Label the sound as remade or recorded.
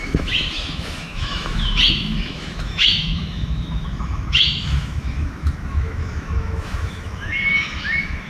remade